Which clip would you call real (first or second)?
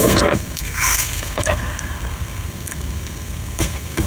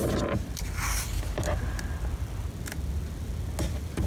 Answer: second